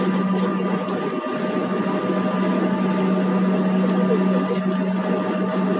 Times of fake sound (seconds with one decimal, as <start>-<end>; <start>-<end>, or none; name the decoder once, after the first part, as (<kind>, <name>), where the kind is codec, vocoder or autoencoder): none